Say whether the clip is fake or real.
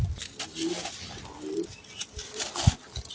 real